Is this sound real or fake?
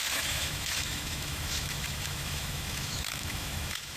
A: fake